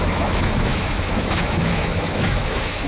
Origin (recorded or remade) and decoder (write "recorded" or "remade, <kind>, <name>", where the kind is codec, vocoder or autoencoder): remade, autoencoder, DAC-VAE